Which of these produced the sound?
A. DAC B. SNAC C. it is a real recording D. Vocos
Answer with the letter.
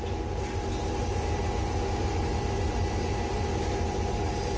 C